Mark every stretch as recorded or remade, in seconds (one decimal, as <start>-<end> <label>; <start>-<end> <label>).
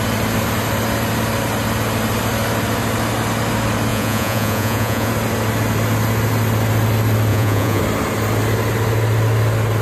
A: 0.0-3.9 recorded; 3.9-5.1 remade; 5.1-7.3 recorded; 7.3-7.8 remade; 7.8-9.8 recorded